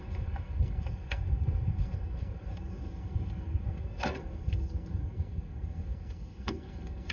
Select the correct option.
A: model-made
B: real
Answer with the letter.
A